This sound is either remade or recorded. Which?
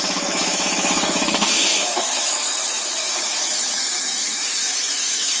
remade